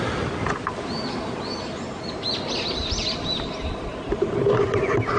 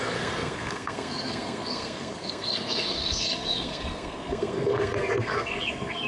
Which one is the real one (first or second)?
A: first